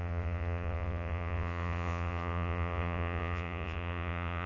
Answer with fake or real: fake